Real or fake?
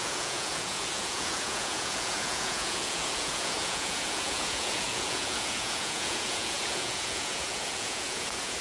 fake